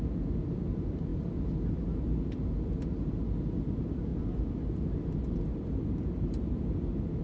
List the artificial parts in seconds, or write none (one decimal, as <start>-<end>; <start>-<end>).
none